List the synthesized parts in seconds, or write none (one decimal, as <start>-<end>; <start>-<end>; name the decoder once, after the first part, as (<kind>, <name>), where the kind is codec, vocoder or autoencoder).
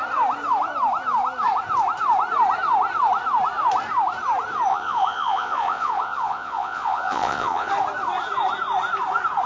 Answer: 4.7-7.7 (vocoder, Vocos)